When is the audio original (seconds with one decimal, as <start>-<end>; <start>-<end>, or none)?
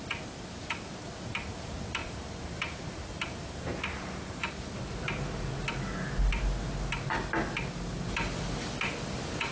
0.0-2.0; 3.4-9.5